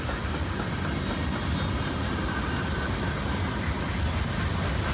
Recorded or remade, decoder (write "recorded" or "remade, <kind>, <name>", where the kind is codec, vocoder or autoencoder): recorded